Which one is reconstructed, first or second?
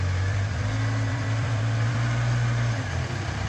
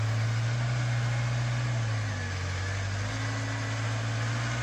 first